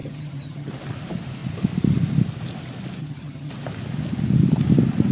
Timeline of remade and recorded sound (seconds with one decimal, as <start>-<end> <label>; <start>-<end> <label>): 0.0-0.7 remade; 0.7-3.0 recorded; 3.0-3.5 remade; 3.5-5.1 recorded

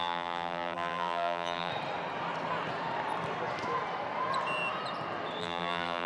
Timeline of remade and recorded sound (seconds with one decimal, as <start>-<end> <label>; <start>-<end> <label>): 0.0-1.7 remade; 1.7-5.4 recorded; 5.4-6.1 remade

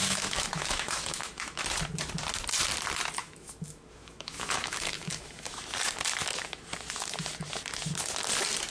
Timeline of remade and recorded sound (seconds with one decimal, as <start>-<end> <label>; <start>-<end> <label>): 0.0-1.6 remade; 1.6-3.2 recorded; 3.2-5.6 remade; 5.6-6.2 recorded; 6.2-6.7 remade; 6.7-8.7 recorded

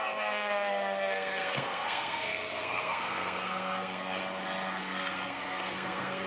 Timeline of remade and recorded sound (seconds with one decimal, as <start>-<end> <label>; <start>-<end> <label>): 0.0-4.2 remade; 4.2-4.8 recorded; 4.8-6.3 remade

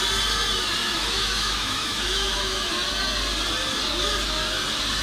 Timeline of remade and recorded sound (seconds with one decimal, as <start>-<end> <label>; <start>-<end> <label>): 0.0-0.8 recorded; 0.8-2.7 remade; 2.7-5.0 recorded

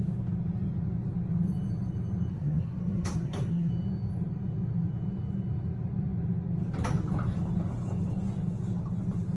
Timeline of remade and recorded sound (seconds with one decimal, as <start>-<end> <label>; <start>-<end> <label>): 0.0-2.3 recorded; 2.3-3.7 remade; 3.7-9.4 recorded

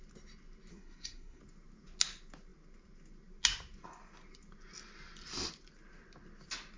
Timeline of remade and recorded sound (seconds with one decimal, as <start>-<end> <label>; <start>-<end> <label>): 0.0-0.7 recorded; 0.7-1.4 remade; 1.4-6.8 recorded

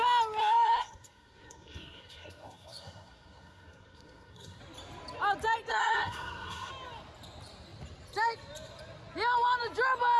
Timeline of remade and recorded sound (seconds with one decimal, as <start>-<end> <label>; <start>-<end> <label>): 0.0-0.4 recorded; 0.4-4.6 remade; 4.6-5.7 recorded; 5.7-6.7 remade; 6.7-10.2 recorded